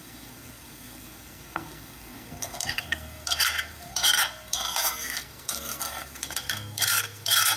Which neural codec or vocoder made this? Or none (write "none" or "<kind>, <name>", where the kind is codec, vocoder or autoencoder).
codec, SNAC